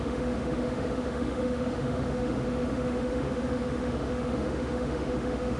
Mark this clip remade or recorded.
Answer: remade